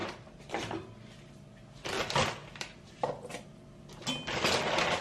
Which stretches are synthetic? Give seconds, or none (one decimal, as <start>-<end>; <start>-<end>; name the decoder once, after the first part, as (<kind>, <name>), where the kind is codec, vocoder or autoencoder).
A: none